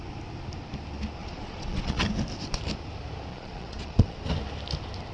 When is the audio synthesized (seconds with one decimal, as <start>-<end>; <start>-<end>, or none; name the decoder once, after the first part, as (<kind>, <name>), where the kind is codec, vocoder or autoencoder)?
1.2-2.0 (vocoder, Vocos); 3.3-4.2

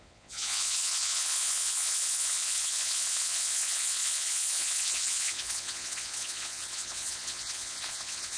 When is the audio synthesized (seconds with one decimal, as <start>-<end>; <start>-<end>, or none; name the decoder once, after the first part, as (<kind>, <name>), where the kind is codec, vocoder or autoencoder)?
0.0-8.4 (vocoder, Vocos)